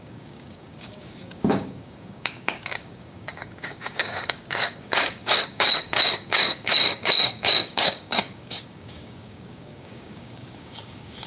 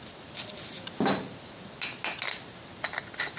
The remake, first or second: first